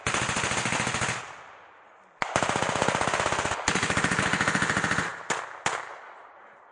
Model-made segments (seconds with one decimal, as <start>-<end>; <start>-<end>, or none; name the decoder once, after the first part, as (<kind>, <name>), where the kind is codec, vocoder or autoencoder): none